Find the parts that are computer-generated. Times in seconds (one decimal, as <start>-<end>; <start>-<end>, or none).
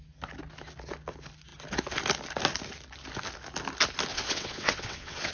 4.1-5.3